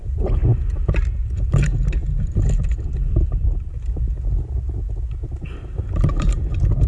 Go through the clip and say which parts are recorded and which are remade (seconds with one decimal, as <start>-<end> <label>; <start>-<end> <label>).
0.0-6.9 remade